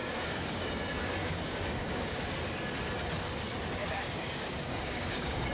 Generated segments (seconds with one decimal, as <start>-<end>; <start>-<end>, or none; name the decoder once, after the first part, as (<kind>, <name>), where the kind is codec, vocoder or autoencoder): 0.0-0.7 (codec, DAC); 1.2-2.3; 3.8-5.5